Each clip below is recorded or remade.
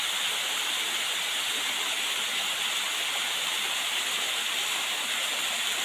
recorded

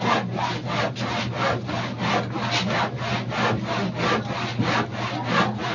recorded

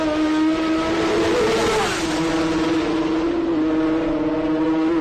recorded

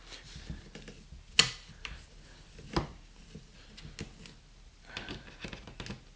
recorded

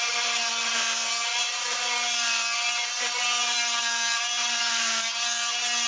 remade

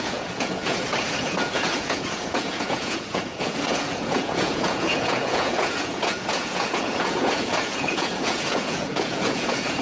remade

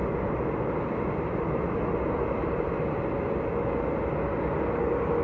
recorded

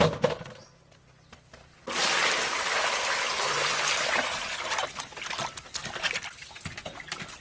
recorded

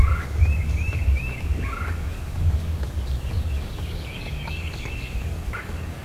remade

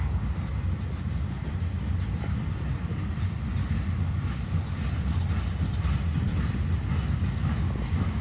recorded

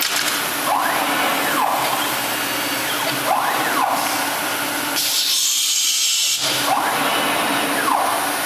recorded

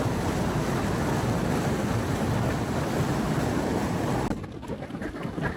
recorded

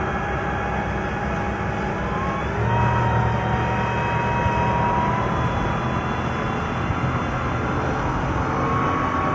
recorded